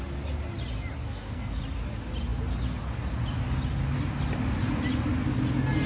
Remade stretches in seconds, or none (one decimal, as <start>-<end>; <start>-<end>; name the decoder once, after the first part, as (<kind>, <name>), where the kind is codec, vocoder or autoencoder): 1.0-1.5 (codec, SNAC)